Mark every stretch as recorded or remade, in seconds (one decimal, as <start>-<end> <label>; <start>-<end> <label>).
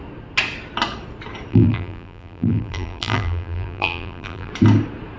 0.0-1.5 recorded; 1.5-4.5 remade; 4.5-5.2 recorded